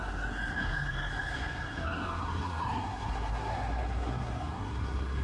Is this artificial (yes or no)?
yes